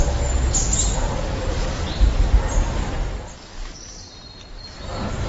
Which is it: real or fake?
real